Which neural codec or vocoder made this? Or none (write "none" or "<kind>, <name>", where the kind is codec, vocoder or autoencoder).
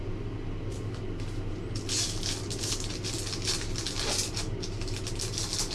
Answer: none